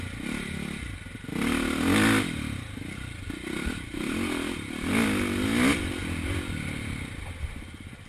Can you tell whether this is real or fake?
real